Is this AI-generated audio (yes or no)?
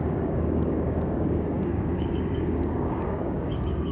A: yes